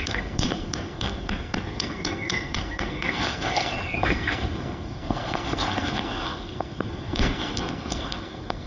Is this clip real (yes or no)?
no